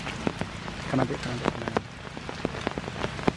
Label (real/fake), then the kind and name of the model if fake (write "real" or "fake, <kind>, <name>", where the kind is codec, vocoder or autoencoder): real